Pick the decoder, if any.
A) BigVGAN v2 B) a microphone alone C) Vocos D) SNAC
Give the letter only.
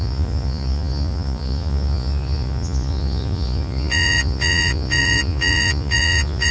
C